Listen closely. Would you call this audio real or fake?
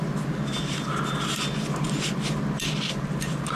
real